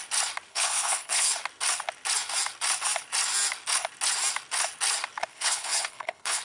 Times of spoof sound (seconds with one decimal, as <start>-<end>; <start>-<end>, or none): 0.5-1.3; 5.3-6.4